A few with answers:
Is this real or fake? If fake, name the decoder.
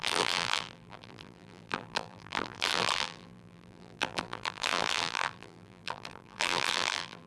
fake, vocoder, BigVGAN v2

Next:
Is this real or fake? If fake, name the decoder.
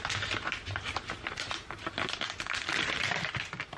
real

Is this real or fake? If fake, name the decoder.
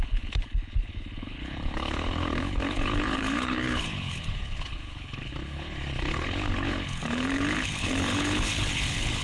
fake, codec, HILCodec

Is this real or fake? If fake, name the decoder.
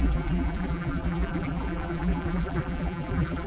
fake, vocoder, BigVGAN v2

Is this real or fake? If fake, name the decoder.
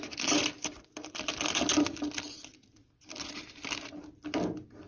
real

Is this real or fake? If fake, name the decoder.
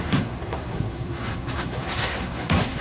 fake, codec, SNAC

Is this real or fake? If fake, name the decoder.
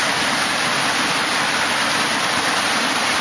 real